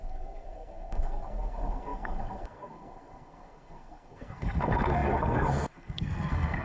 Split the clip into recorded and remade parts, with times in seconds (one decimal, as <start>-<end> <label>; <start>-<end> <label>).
0.0-6.6 remade

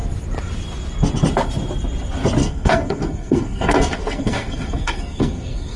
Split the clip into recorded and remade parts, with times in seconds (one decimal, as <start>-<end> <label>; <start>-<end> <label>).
0.0-2.4 recorded; 2.4-5.8 remade

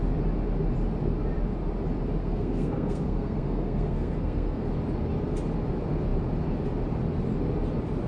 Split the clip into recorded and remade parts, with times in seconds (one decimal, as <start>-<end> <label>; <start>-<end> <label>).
0.0-2.2 recorded; 2.2-4.7 remade; 4.7-8.1 recorded